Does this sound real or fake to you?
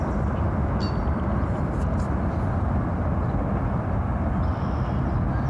real